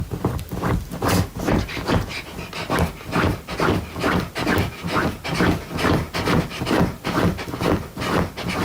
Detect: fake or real real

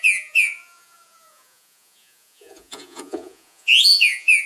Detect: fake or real fake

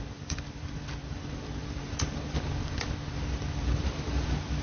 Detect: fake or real fake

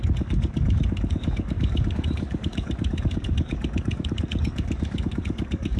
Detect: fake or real fake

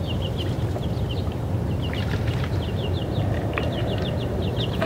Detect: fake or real real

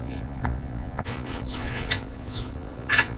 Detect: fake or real fake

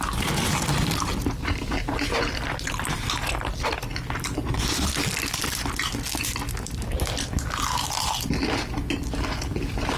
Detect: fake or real real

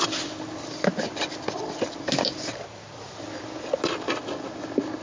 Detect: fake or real real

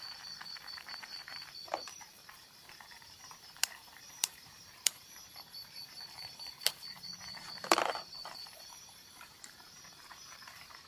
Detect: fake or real fake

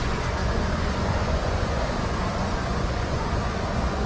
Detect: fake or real fake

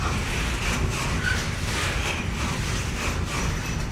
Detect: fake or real real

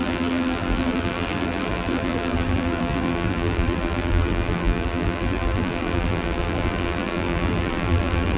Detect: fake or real fake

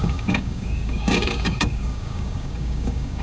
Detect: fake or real fake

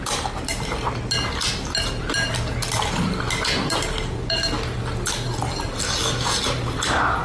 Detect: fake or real real